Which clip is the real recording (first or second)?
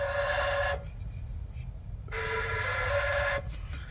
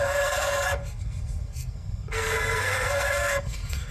first